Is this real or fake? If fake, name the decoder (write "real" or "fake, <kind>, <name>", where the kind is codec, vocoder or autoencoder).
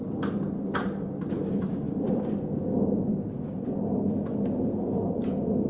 real